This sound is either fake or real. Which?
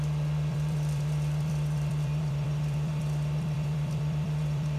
fake